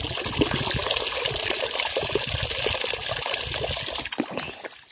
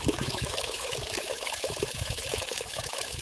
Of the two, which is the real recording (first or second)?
first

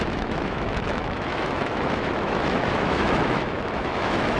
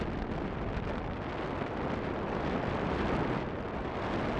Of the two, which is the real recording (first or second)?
second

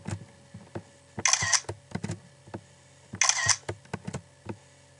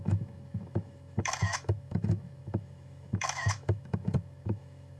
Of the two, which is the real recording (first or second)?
first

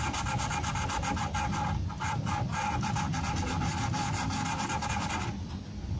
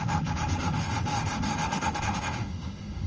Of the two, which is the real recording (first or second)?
first